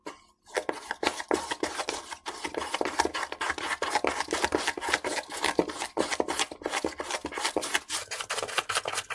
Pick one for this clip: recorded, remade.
recorded